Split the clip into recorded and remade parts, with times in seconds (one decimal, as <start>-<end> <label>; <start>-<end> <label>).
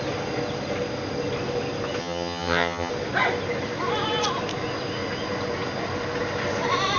0.0-2.0 recorded; 2.0-2.9 remade; 2.9-7.0 recorded